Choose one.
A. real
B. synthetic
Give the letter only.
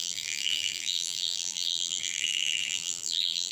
B